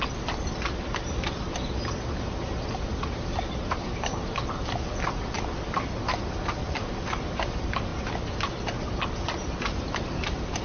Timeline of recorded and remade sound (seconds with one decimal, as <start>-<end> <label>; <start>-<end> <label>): 0.0-10.6 recorded